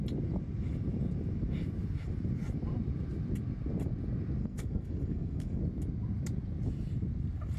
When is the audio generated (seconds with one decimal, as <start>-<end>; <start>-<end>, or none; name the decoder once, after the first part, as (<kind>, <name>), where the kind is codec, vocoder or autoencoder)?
4.4-5.6 (codec, SNAC)